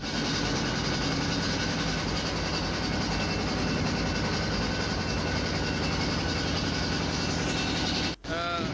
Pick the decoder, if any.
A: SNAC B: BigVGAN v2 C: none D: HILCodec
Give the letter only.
C